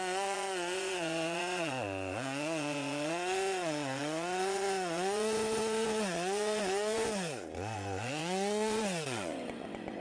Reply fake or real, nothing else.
fake